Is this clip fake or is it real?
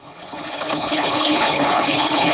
fake